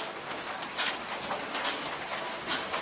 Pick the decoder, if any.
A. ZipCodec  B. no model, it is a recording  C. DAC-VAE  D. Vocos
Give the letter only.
B